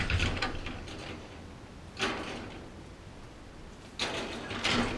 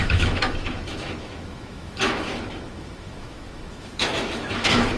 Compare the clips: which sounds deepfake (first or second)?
second